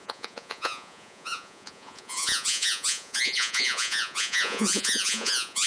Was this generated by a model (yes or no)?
yes